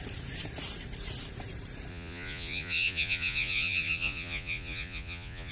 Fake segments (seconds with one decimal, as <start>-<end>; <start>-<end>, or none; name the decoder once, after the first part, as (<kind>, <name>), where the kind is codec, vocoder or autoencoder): 1.9-5.5 (vocoder, Vocos)

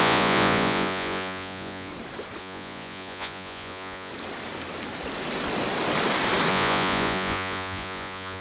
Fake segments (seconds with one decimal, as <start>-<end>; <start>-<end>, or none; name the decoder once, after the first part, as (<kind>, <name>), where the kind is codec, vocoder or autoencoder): 0.0-1.9 (vocoder, Vocos); 2.4-4.1; 6.5-8.4

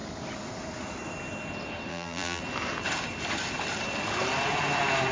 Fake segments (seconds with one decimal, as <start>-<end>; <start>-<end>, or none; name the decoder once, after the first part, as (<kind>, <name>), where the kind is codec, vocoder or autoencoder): 1.9-2.4 (vocoder, BigVGAN v2)

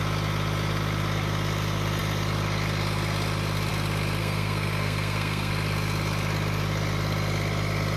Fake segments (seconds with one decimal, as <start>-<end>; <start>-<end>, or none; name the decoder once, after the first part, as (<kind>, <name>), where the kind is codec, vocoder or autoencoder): 4.2-5.5 (codec, SNAC)

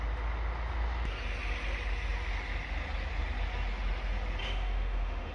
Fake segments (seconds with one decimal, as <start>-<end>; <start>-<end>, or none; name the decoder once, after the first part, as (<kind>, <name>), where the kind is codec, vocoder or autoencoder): 4.4-5.3 (autoencoder, DAC-VAE)

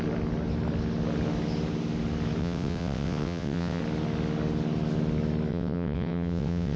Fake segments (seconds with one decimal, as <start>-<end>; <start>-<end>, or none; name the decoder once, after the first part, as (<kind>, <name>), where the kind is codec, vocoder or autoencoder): 2.4-3.8 (vocoder, WaveNeXt); 5.5-6.8